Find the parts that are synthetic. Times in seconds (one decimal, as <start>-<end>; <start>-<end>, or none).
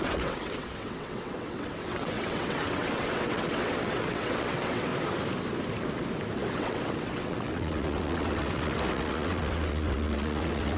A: 0.0-4.9; 6.5-10.8